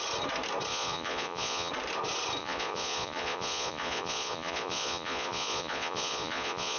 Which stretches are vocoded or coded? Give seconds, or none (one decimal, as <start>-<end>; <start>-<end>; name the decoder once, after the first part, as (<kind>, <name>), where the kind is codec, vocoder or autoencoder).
0.7-1.7 (vocoder, Vocos); 2.4-6.8